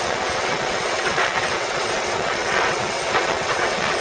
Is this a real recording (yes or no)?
no